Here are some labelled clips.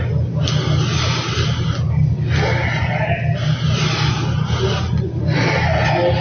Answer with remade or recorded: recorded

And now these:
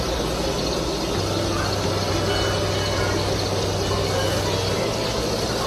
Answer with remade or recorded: recorded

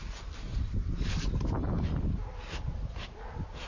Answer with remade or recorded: recorded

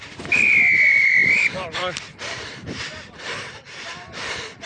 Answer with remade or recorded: remade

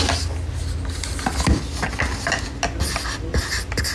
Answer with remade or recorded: recorded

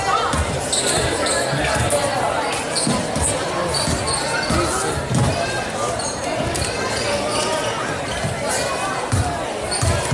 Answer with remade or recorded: recorded